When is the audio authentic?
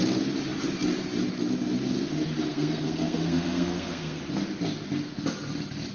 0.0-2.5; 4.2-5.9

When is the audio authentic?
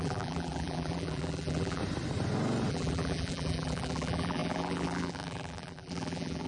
1.8-2.7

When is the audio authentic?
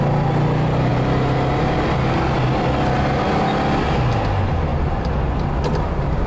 0.0-6.3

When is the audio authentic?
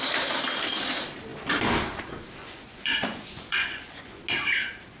0.0-2.4; 4.2-5.0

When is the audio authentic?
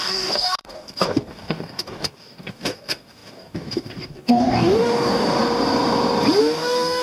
5.4-6.4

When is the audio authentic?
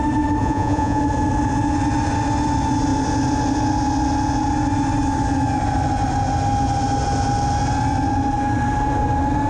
0.0-0.4; 1.0-9.5